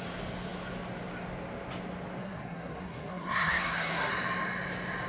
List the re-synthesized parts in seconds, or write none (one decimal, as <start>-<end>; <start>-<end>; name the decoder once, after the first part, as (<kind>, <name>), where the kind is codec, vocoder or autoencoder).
2.2-4.1 (codec, SNAC)